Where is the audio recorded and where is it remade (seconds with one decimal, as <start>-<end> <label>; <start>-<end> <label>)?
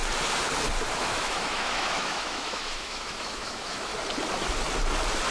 0.0-0.9 recorded; 0.9-3.9 remade; 3.9-5.3 recorded